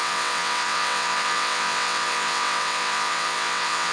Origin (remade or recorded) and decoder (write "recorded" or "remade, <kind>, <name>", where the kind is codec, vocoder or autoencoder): remade, vocoder, WaveNeXt